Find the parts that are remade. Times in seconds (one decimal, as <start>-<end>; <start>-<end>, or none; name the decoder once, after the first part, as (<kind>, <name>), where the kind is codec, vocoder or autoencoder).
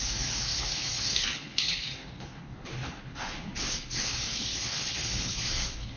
0.0-6.0 (codec, HILCodec)